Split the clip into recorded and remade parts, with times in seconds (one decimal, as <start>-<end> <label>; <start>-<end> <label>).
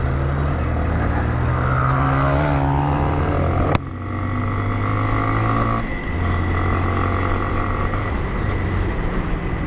0.0-9.7 recorded